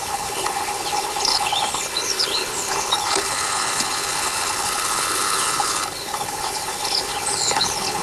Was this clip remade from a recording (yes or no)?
yes